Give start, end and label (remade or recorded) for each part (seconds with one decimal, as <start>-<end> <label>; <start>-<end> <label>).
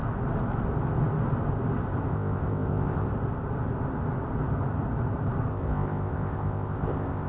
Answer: 0.0-2.1 recorded; 2.1-3.1 remade; 3.1-5.5 recorded; 5.5-7.3 remade